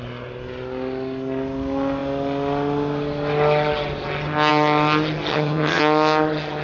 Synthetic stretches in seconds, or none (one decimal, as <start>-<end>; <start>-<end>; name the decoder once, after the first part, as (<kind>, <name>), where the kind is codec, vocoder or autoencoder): 5.3-5.8 (vocoder, HiFi-GAN)